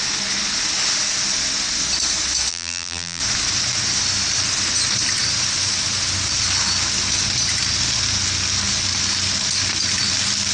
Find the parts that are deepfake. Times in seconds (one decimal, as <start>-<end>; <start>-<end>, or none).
2.5-3.2